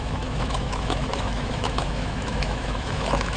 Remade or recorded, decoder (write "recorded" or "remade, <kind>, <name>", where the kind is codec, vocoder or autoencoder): remade, autoencoder, DAC-VAE